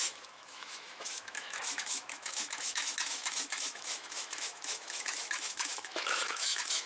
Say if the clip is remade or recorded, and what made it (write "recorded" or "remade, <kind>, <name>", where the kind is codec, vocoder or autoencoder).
remade, autoencoder, DAC-VAE